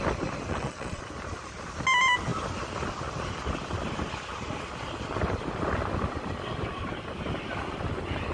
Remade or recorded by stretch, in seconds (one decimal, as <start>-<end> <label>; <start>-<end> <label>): 0.0-0.5 recorded; 0.5-1.0 remade; 1.0-8.3 recorded